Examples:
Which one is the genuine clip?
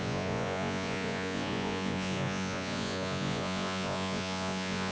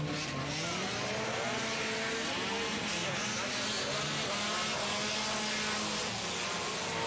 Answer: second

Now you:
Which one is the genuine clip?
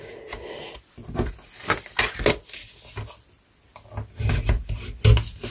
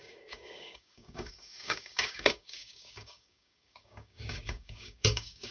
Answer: first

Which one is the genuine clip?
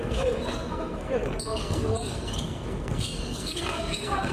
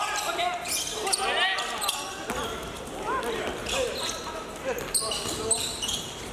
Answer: second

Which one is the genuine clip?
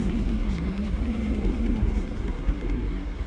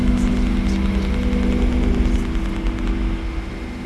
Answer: second